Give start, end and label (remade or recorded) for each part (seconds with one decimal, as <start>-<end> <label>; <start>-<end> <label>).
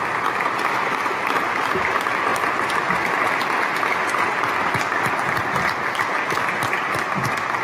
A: 0.0-7.6 recorded